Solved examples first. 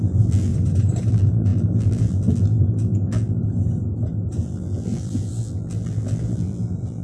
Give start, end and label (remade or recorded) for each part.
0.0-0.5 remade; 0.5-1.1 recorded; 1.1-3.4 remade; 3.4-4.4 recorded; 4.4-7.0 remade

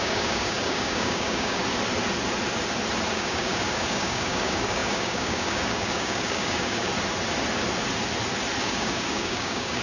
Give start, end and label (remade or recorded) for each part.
0.0-1.6 remade; 1.6-3.1 recorded; 3.1-6.9 remade; 6.9-8.6 recorded; 8.6-9.8 remade

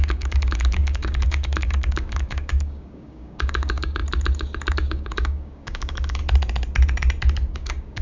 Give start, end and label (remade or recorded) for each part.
0.0-4.0 remade; 4.0-4.7 recorded; 4.7-6.2 remade; 6.2-7.5 recorded; 7.5-8.0 remade

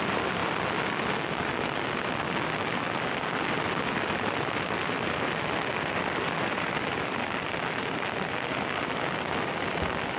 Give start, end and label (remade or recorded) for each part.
0.0-10.2 recorded

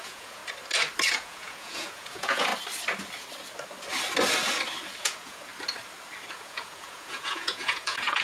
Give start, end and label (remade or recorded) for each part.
0.0-0.4 remade; 0.4-1.1 recorded; 1.1-2.5 remade; 2.5-5.0 recorded; 5.0-5.5 remade; 5.5-6.3 recorded; 6.3-8.2 remade